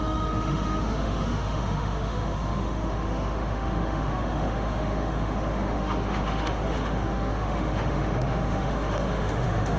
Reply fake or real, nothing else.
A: fake